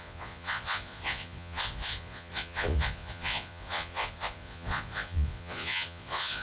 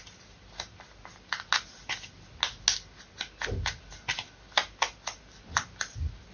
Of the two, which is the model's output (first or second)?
first